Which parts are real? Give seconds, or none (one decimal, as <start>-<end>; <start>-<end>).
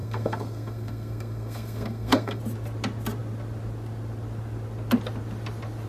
2.4-5.9